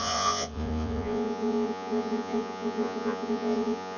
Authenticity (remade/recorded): remade